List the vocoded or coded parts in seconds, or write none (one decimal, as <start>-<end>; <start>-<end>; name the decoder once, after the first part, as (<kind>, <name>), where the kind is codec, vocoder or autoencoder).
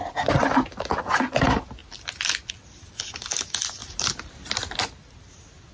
none